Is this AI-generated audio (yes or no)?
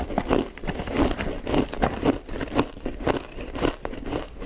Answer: no